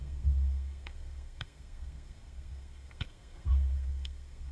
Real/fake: fake